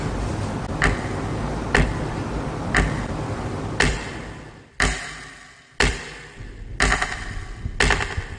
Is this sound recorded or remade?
recorded